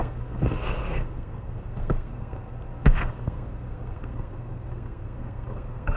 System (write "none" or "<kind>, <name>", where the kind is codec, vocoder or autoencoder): codec, SNAC